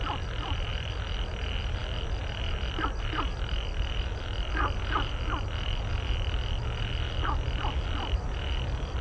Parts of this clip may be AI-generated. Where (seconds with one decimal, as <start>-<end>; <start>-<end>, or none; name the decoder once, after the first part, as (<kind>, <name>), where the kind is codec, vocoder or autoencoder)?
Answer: none

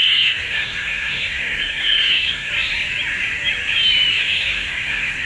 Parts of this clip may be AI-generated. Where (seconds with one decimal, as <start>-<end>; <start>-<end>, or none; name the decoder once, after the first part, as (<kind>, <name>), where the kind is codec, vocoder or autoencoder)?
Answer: 0.0-2.5 (codec, SNAC); 4.1-5.3